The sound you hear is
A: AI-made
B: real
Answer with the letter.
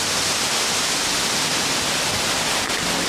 B